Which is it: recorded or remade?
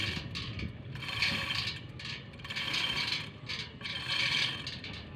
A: recorded